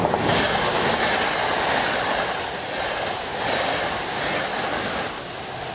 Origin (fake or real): real